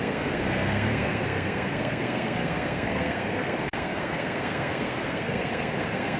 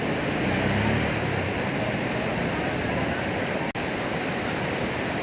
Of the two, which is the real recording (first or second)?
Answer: second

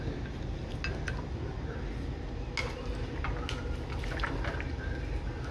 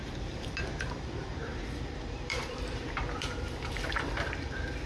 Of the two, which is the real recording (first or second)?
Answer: first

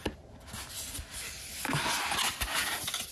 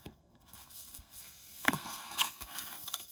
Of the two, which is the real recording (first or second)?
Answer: first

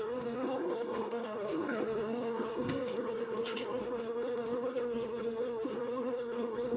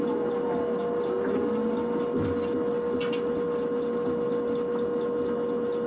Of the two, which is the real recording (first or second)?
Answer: second